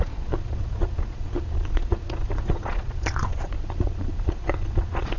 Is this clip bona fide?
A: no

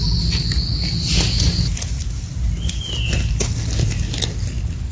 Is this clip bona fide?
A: yes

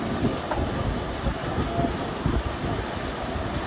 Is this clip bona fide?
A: yes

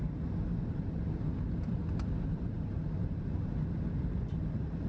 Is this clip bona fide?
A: yes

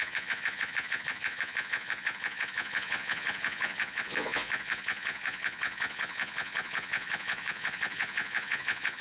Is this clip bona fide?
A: no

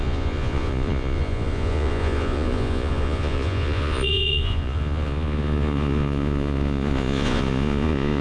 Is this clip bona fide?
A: no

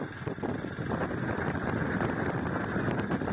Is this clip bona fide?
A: yes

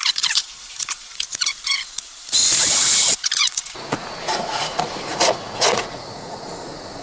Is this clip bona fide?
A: no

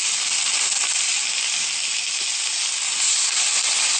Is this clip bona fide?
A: yes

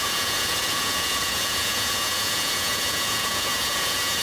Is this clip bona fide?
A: no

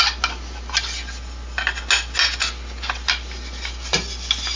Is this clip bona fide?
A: yes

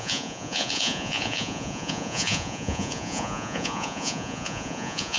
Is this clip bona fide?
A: no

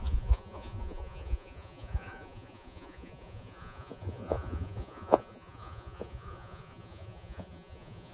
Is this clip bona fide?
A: no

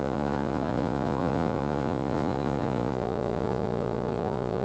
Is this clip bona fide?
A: no